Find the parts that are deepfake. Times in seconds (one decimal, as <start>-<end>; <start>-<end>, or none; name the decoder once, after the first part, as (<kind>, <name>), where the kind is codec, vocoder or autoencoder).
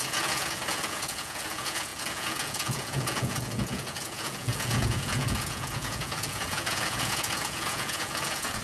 0.0-8.6 (vocoder, Vocos)